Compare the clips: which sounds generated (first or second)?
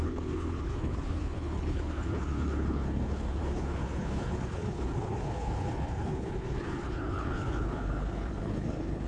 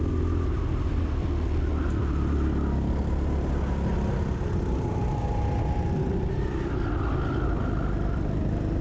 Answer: first